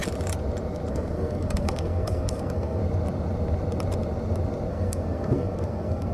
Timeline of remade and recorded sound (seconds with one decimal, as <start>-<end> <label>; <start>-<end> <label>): 0.0-0.9 recorded; 0.9-2.8 remade; 2.8-4.7 recorded; 4.7-6.1 remade